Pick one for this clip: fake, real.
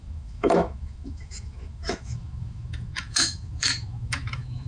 fake